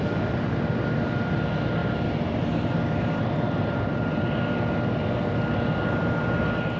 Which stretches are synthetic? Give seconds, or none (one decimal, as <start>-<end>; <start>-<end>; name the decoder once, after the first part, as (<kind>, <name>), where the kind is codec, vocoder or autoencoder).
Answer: none

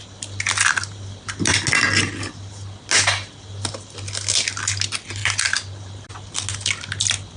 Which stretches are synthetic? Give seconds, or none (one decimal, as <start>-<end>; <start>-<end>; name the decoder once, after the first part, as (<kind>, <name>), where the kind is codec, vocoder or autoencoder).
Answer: 5.2-6.1 (vocoder, BigVGAN v2)

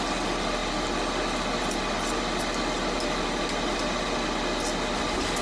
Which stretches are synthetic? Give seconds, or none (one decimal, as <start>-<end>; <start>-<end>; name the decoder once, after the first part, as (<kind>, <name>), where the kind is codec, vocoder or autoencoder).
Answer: none

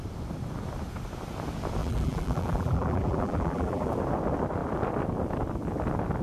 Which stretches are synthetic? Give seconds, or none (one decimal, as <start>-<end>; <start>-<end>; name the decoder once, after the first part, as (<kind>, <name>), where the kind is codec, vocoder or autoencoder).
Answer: 1.8-3.9 (vocoder, BigVGAN v2)

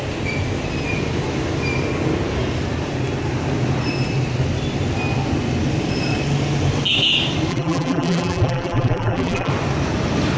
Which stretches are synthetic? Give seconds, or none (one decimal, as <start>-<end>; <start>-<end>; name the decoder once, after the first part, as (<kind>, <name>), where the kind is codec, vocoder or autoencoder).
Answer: 7.5-9.5 (vocoder, BigVGAN v2)

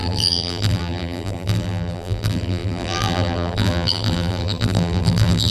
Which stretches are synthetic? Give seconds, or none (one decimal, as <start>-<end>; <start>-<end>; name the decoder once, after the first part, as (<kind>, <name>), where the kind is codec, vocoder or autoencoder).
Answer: 0.0-5.5 (vocoder, BigVGAN v2)

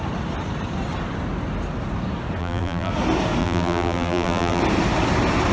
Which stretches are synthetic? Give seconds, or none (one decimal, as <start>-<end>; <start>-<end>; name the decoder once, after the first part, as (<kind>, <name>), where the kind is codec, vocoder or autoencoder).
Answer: 2.4-2.9 (vocoder, BigVGAN v2); 3.4-4.6